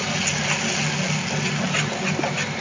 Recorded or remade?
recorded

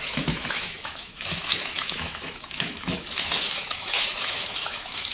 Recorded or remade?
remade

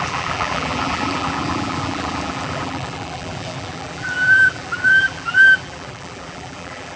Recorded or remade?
remade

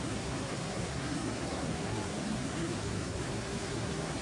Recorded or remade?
remade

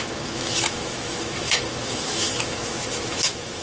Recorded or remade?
remade